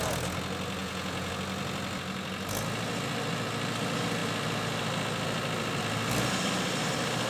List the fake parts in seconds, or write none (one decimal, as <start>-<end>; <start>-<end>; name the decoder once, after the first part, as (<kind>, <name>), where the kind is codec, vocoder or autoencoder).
0.8-1.3 (vocoder, Vocos)